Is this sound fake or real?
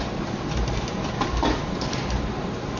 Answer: real